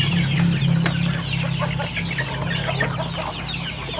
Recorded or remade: recorded